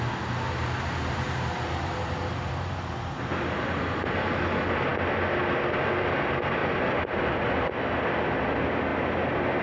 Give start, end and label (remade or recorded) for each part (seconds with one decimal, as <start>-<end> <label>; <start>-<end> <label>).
0.0-9.6 recorded